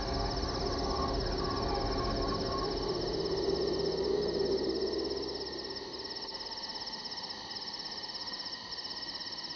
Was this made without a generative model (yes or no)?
yes